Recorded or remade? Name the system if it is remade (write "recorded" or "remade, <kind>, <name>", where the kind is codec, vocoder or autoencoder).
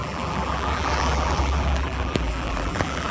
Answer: remade, vocoder, BigVGAN v2